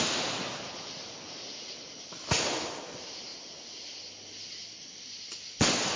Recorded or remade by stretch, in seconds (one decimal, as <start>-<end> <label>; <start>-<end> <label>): 0.0-6.0 recorded

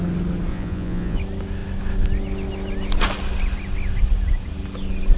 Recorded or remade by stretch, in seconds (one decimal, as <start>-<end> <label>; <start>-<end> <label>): 0.0-0.5 recorded; 0.5-1.2 remade; 1.2-5.2 recorded

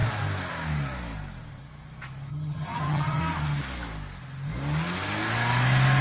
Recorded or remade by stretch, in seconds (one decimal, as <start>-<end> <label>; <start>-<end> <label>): 0.0-2.3 recorded; 2.3-3.2 remade; 3.2-6.0 recorded

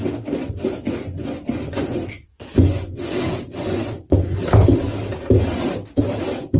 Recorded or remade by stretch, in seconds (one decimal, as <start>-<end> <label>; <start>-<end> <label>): 0.0-0.4 recorded; 0.4-4.4 remade; 4.4-6.6 recorded

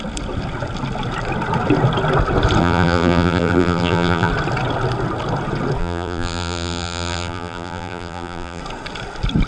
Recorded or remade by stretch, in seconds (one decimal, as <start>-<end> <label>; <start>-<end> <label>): 0.0-2.6 recorded; 2.6-4.3 remade; 4.3-5.8 recorded; 5.8-8.6 remade; 8.6-9.5 recorded

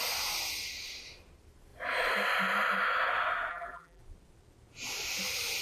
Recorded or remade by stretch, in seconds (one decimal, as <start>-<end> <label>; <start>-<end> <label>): 0.0-3.5 recorded; 3.5-4.0 remade; 4.0-5.6 recorded

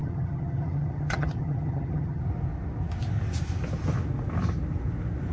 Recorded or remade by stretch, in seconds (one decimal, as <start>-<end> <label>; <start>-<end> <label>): 0.0-2.2 remade; 2.2-5.3 recorded